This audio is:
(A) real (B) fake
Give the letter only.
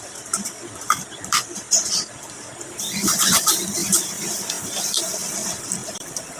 B